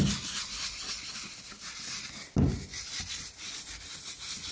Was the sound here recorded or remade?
recorded